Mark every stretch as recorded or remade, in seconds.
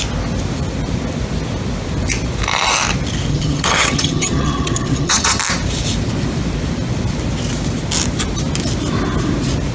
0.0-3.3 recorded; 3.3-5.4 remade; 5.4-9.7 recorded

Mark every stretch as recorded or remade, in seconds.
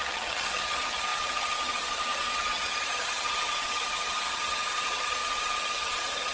0.0-6.3 remade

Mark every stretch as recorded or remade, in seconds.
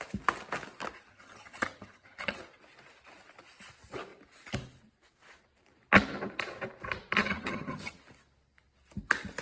0.0-1.1 recorded; 1.1-2.4 remade; 2.4-7.2 recorded; 7.2-8.0 remade; 8.0-9.4 recorded